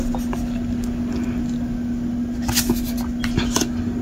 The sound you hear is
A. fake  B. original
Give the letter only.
B